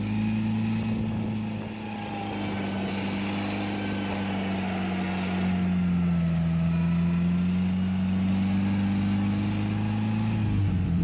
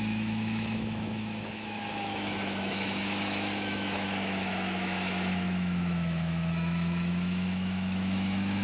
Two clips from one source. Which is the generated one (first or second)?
second